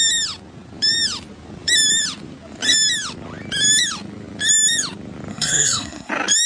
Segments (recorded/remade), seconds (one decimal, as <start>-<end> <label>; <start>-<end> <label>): 0.0-5.3 recorded; 5.3-6.1 remade; 6.1-6.5 recorded